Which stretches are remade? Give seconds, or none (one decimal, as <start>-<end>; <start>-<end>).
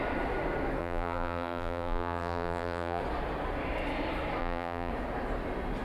0.8-3.0; 4.4-4.9